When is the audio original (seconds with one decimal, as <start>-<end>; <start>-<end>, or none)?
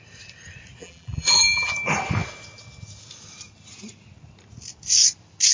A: 0.0-0.8; 1.7-5.5